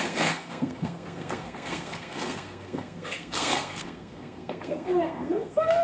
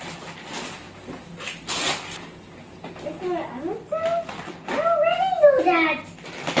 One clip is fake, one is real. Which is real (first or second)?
second